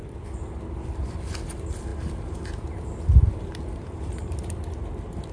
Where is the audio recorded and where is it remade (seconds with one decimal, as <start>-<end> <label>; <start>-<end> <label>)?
0.0-5.3 recorded